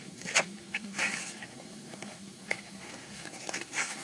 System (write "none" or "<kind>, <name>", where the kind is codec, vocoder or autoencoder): codec, SNAC